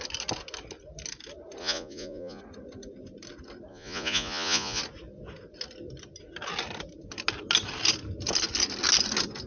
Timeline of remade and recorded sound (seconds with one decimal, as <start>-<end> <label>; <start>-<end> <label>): 0.0-1.6 recorded; 1.6-2.4 remade; 2.4-3.7 recorded; 3.7-4.8 remade; 4.8-9.5 recorded